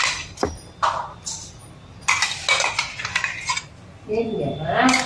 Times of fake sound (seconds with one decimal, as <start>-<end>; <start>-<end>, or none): none